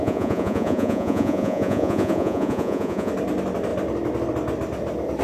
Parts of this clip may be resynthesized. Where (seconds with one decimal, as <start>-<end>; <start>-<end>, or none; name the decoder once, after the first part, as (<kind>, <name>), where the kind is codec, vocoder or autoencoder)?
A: 0.0-3.1 (vocoder, Vocos)